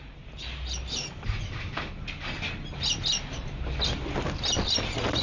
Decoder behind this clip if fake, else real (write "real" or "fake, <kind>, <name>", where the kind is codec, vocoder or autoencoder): real